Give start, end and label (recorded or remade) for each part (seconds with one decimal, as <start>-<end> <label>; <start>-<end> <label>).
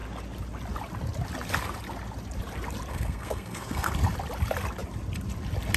0.0-2.9 recorded; 2.9-3.9 remade; 3.9-5.8 recorded